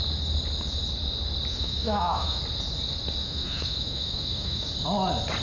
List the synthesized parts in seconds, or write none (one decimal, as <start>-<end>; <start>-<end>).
1.5-2.4; 3.2-4.7